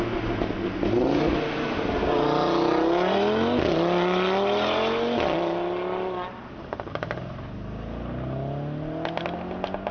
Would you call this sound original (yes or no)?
yes